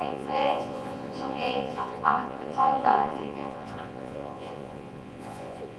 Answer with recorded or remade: remade